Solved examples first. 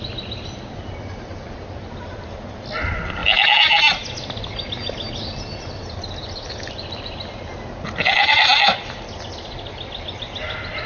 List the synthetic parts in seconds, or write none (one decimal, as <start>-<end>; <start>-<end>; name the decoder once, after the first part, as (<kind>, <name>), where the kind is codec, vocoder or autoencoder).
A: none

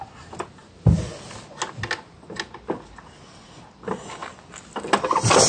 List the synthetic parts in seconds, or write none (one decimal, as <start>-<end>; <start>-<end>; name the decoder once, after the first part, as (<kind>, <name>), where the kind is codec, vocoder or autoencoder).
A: none

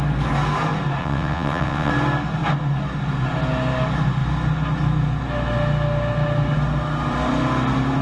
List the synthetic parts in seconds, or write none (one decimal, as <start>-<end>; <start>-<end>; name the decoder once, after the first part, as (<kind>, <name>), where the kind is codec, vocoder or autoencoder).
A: 1.0-1.9 (vocoder, WaveNeXt)

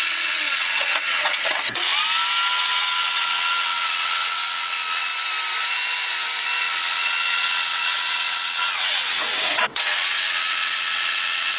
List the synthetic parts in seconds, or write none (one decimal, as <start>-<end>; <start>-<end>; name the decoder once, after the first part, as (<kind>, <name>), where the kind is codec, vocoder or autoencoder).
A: 0.0-1.9 (vocoder, WaveNeXt); 2.5-5.1; 6.6-11.6

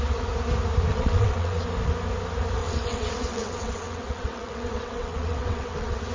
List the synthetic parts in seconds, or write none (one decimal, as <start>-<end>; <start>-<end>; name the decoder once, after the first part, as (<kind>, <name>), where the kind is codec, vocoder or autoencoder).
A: 0.9-1.6 (vocoder, WaveNeXt); 2.6-6.1